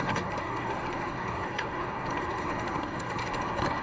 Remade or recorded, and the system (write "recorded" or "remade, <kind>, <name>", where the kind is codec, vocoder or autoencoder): remade, codec, SNAC